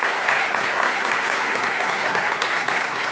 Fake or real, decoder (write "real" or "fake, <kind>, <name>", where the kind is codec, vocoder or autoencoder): fake, codec, SNAC